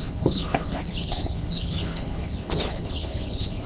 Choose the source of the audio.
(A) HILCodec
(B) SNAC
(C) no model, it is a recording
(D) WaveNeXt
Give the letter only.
A